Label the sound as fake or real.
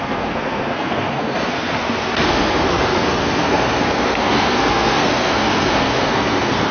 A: fake